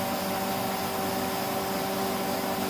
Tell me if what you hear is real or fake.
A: real